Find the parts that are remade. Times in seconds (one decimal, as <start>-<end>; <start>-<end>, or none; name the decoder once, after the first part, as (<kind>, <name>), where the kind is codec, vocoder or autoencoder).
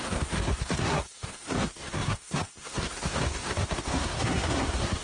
0.0-5.0 (codec, SNAC)